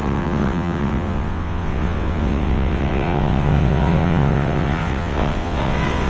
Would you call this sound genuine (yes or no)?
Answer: no